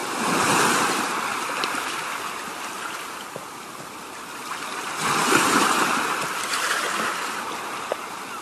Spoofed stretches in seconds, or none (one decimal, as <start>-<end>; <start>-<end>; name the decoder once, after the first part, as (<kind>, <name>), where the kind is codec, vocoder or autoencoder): 0.0-8.4 (vocoder, BigVGAN v2)